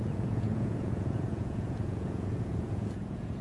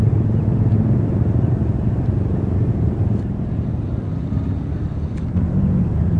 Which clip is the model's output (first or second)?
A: first